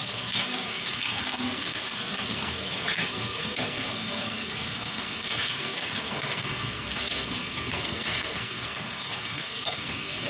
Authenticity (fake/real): fake